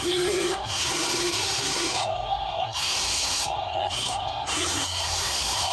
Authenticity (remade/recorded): remade